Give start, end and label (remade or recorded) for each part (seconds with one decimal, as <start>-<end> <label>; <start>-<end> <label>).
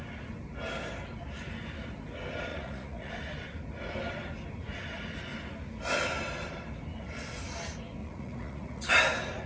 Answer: 0.0-2.5 recorded; 2.5-3.1 remade; 3.1-8.0 recorded; 8.0-8.9 remade; 8.9-9.5 recorded